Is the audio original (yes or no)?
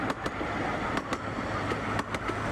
yes